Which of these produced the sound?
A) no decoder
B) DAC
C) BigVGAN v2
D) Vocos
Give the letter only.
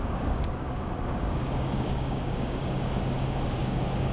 B